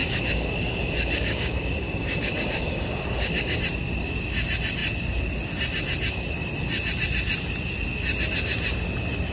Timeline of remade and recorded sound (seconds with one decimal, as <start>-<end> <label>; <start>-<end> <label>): 0.0-3.6 remade; 3.6-9.3 recorded